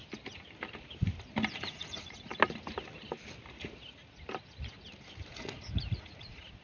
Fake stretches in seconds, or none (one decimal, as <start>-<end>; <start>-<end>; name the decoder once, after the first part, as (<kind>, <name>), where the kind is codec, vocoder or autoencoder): 1.5-2.3 (vocoder, Vocos); 5.3-6.6